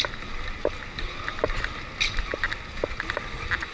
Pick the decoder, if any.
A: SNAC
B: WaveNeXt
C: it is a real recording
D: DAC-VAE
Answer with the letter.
C